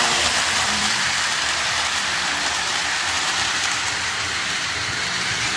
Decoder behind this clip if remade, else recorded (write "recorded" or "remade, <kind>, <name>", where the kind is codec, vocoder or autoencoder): remade, vocoder, BigVGAN v2